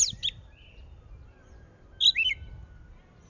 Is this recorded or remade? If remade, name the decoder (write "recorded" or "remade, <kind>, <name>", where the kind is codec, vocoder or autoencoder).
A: recorded